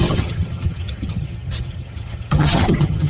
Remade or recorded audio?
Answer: remade